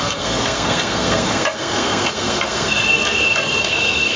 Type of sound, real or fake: fake